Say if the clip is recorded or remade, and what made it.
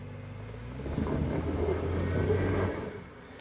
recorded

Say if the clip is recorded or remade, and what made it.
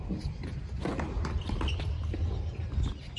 recorded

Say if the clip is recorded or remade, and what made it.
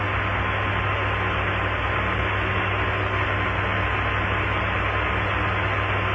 recorded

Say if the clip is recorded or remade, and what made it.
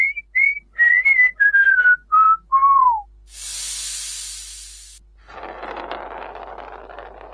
recorded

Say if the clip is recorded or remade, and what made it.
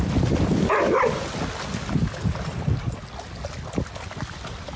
recorded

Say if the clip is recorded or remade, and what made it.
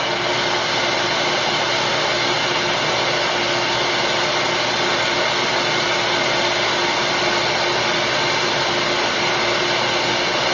recorded